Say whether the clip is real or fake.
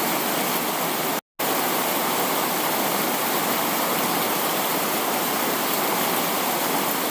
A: real